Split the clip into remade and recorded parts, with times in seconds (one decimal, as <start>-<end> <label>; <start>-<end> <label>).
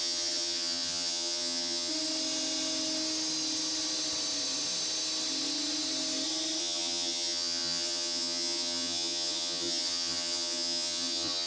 0.0-1.9 remade; 1.9-6.6 recorded; 6.6-11.5 remade